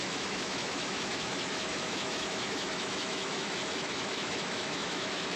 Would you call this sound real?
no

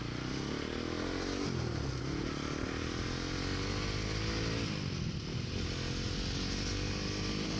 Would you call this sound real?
yes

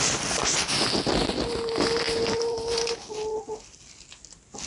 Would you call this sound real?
yes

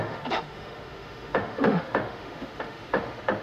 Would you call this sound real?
no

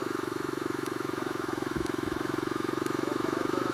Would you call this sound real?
no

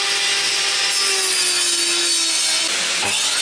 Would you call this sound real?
yes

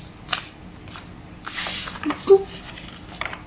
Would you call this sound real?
yes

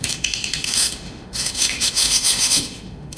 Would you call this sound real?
no